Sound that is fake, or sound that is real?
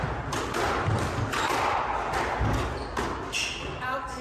real